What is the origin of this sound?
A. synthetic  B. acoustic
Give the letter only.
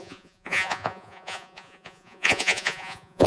A